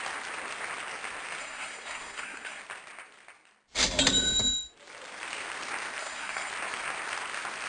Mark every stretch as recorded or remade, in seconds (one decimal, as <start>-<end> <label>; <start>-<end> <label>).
0.0-1.4 recorded; 1.4-2.6 remade; 2.6-6.0 recorded; 6.0-6.5 remade; 6.5-7.7 recorded